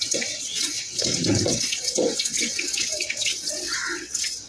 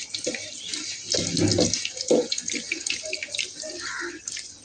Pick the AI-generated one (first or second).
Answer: first